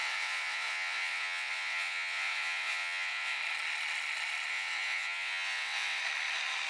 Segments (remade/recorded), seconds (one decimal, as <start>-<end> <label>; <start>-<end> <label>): 0.0-3.4 remade; 3.4-4.5 recorded; 4.5-6.0 remade; 6.0-6.7 recorded